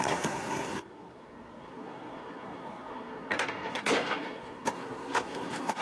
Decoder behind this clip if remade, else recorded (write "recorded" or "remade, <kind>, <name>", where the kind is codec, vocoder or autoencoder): remade, codec, SNAC